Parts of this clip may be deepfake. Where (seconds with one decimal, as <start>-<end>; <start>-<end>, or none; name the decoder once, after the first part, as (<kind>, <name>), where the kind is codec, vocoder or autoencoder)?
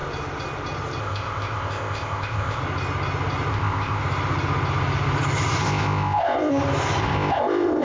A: 1.0-2.6 (codec, ZipCodec); 3.5-4.0; 5.6-6.5; 7.0-7.8